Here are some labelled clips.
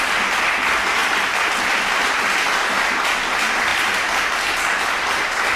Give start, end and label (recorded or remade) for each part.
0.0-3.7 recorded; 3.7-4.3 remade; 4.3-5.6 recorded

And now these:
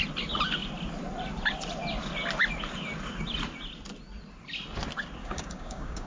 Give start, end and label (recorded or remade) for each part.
0.0-5.2 recorded; 5.2-6.1 remade